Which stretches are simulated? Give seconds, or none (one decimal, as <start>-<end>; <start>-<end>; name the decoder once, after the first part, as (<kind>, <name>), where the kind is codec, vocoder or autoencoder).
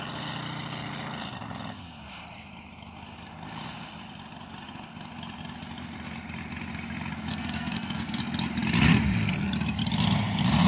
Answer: 7.3-8.2 (codec, SNAC)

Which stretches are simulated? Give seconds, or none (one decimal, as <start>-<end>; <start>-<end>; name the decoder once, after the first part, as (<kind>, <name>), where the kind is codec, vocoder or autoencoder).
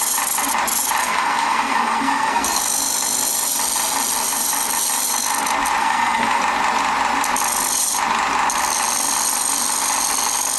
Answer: 1.0-2.6 (codec, SNAC); 5.8-6.4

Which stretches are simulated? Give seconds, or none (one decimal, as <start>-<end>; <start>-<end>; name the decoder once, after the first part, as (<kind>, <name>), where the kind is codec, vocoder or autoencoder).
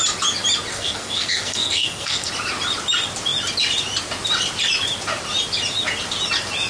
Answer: 0.7-2.3 (codec, SNAC)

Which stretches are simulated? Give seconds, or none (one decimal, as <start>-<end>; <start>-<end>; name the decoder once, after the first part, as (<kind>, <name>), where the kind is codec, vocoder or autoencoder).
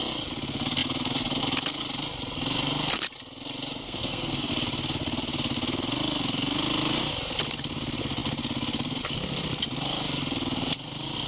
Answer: 3.8-4.5 (codec, SNAC)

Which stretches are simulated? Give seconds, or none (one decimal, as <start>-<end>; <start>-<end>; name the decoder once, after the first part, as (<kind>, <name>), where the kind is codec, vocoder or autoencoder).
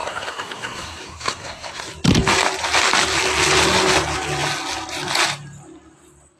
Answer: 0.0-1.8 (codec, SNAC)